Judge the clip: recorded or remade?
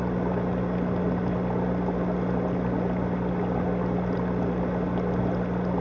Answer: recorded